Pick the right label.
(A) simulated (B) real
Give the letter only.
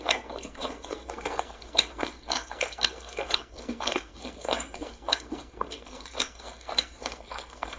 A